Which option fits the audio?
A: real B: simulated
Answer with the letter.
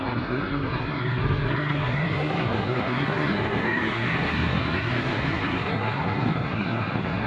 B